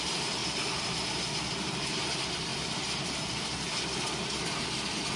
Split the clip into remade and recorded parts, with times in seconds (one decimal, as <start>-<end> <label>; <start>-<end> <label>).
0.0-0.4 remade; 0.4-1.5 recorded; 1.5-2.5 remade; 2.5-5.2 recorded